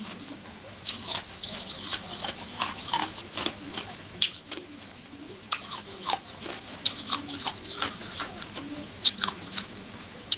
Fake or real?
fake